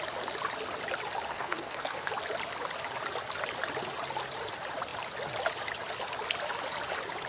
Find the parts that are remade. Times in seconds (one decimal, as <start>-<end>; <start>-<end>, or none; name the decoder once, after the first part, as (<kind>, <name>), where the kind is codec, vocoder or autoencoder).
1.3-2.1 (codec, SNAC)

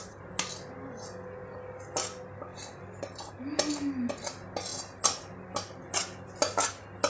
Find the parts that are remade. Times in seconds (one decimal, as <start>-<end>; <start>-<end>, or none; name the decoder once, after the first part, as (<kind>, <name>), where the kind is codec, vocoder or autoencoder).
none